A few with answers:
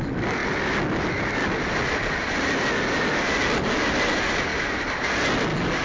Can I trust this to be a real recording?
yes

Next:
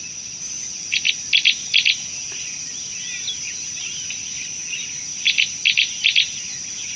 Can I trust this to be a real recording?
yes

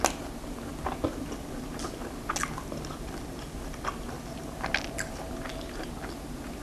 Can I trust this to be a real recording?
yes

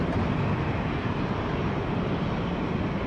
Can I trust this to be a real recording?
yes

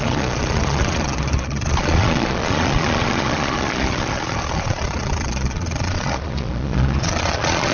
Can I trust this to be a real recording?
no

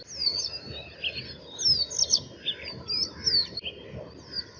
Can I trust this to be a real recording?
yes